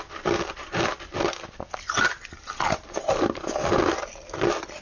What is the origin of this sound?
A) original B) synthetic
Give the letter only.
A